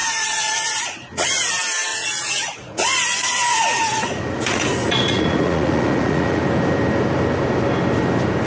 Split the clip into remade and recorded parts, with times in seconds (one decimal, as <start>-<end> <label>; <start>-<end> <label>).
0.0-1.5 remade; 1.5-1.9 recorded; 1.9-6.4 remade; 6.4-8.5 recorded